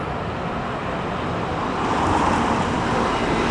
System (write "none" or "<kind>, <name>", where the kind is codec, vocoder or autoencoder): none